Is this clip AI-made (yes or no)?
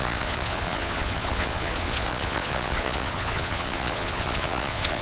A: yes